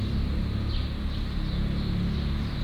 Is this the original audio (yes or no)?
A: yes